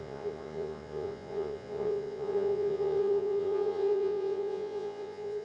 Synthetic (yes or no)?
yes